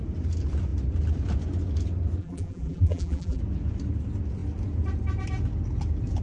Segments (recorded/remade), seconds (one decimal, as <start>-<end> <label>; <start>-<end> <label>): 0.0-2.2 recorded; 2.2-3.4 remade; 3.4-6.2 recorded